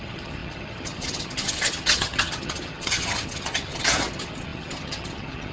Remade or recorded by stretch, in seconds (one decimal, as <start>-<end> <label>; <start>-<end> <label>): 0.0-5.5 remade